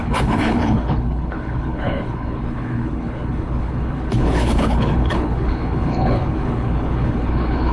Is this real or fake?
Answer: fake